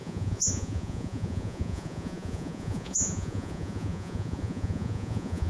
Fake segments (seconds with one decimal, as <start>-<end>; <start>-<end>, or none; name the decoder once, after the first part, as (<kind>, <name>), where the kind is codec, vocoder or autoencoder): 0.0-5.5 (vocoder, Vocos)